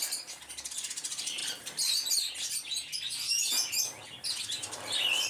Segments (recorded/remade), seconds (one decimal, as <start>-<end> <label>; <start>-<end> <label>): 0.0-1.4 remade; 1.4-4.6 recorded; 4.6-5.3 remade